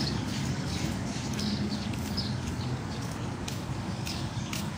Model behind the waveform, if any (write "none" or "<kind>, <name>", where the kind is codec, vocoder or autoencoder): codec, DAC